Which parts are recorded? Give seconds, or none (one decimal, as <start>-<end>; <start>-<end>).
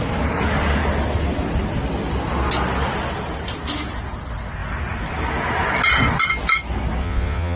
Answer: 0.0-7.0